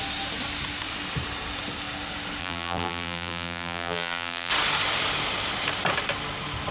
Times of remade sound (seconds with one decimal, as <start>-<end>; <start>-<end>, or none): 2.4-4.5